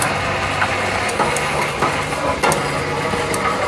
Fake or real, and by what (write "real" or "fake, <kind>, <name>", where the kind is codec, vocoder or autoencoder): real